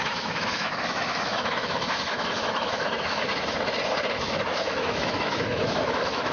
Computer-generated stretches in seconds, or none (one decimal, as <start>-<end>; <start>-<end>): 0.0-3.3; 4.1-6.3